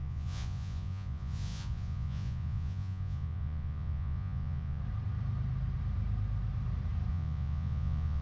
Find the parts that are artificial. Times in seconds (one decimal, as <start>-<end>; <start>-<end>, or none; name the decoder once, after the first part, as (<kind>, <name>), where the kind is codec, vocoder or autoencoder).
0.0-4.8 (vocoder, Vocos); 7.1-8.2